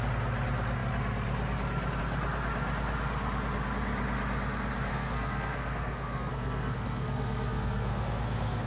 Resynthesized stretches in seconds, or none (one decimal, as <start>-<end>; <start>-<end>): 4.9-8.7